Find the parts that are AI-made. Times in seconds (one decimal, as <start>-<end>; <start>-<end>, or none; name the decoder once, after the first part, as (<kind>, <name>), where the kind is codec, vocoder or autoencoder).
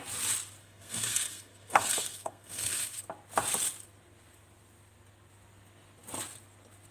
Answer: 0.6-3.0 (codec, SNAC)